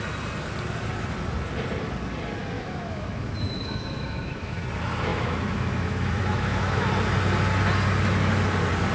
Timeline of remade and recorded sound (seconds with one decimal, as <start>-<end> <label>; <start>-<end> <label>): 0.0-2.4 recorded; 2.4-4.6 remade; 4.6-5.1 recorded; 5.1-6.9 remade; 6.9-8.9 recorded

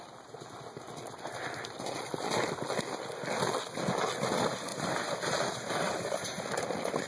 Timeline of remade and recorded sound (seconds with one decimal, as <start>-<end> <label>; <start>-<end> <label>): 0.0-4.7 recorded; 4.7-6.4 remade; 6.4-7.1 recorded

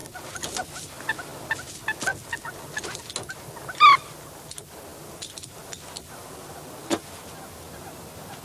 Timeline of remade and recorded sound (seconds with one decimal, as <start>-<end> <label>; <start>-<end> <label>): 0.0-8.4 recorded

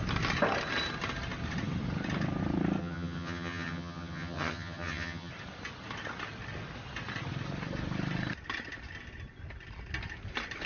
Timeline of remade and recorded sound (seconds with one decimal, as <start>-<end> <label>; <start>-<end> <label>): 0.0-2.8 recorded; 2.8-5.3 remade; 5.3-10.7 recorded

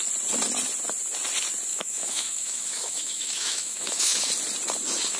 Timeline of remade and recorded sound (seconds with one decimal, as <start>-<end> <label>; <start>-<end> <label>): 0.0-1.7 recorded; 1.7-4.3 remade; 4.3-5.2 recorded

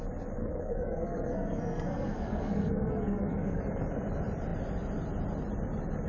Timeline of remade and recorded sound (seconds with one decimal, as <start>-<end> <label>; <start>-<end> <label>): 0.0-0.4 recorded; 0.4-3.6 remade; 3.6-6.1 recorded

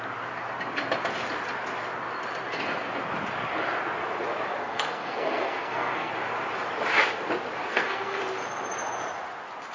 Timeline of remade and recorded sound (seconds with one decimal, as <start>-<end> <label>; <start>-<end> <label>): 0.0-4.6 recorded; 4.6-6.1 remade; 6.1-7.7 recorded; 7.7-8.2 remade; 8.2-9.7 recorded

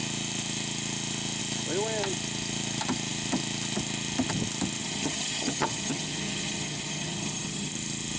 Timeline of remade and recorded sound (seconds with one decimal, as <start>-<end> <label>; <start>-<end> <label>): 0.0-4.8 recorded; 4.8-7.7 remade; 7.7-8.2 recorded